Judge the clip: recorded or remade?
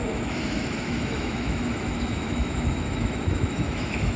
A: remade